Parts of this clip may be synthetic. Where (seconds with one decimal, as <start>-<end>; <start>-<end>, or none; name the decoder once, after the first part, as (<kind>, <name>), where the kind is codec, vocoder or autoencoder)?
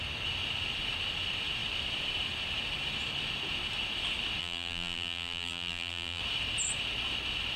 4.4-6.2 (vocoder, BigVGAN v2)